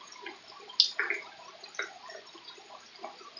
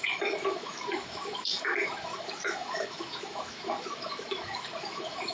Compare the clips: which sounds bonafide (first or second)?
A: first